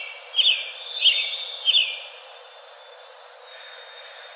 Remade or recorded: recorded